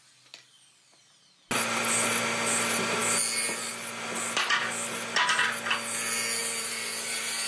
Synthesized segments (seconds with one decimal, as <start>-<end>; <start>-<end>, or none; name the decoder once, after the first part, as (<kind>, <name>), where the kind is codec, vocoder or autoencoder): 6.4-7.5 (vocoder, BigVGAN v2)